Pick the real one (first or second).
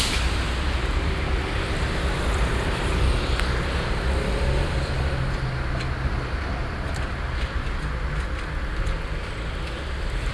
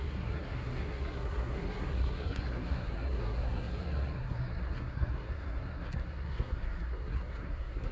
first